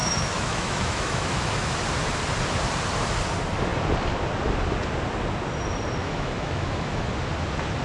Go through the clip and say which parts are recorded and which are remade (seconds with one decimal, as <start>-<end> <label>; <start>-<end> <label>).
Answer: 0.0-1.7 remade; 1.7-6.0 recorded; 6.0-7.1 remade; 7.1-7.8 recorded